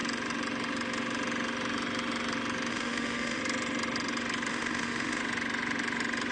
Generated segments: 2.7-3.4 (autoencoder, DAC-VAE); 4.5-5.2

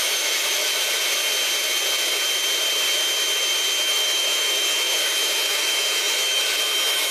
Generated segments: 0.0-0.7 (autoencoder, DAC-VAE); 3.8-7.1

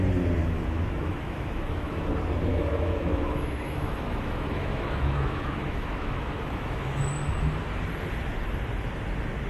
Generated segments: 0.4-2.1 (autoencoder, DAC-VAE); 2.5-7.0